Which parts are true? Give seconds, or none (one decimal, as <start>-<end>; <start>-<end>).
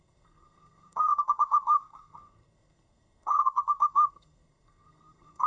none